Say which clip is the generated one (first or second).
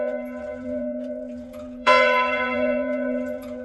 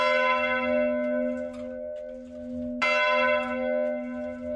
first